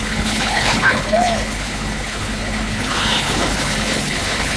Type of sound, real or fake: fake